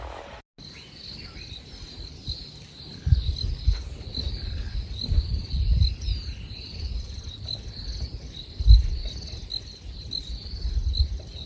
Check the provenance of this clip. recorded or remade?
recorded